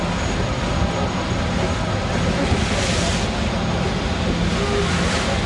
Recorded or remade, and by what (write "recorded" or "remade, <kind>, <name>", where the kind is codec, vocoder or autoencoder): recorded